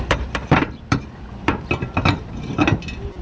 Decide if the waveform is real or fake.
fake